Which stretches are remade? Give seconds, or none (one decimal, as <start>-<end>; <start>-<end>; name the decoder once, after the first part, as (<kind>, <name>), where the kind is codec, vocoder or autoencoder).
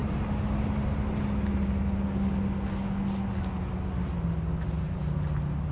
none